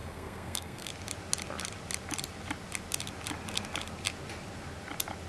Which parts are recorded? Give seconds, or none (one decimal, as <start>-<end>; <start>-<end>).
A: 0.9-5.3